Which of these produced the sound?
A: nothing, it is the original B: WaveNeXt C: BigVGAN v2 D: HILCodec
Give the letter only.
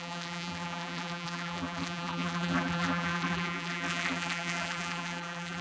C